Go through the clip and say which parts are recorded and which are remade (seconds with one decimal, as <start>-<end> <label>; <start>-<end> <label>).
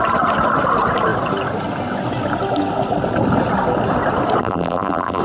0.0-4.4 recorded; 4.4-5.2 remade